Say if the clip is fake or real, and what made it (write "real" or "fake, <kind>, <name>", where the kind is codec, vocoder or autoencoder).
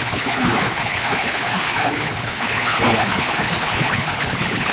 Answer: fake, codec, HILCodec